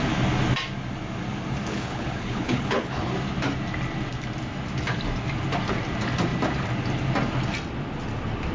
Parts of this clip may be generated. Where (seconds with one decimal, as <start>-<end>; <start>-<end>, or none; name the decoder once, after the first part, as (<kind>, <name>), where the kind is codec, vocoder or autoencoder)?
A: 1.7-3.1 (codec, HILCodec)